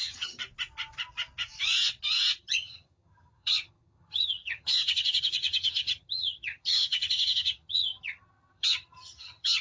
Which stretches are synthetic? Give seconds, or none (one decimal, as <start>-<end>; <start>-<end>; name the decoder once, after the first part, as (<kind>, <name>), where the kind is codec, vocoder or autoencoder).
0.0-0.4 (vocoder, HiFi-GAN); 2.4-9.6